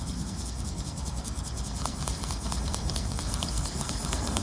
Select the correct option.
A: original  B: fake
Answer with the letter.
B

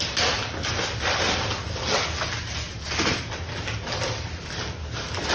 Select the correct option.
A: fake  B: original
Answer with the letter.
B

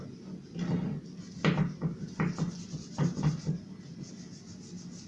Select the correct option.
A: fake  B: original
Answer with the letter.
B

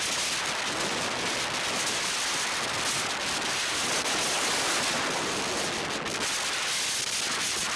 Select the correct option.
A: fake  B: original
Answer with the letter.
B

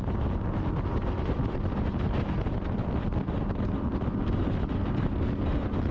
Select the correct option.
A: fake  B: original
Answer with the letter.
B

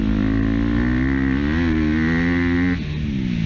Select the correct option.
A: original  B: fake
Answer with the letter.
A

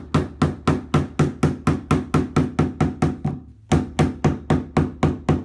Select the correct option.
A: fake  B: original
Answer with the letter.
B